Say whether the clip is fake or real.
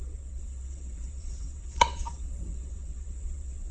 fake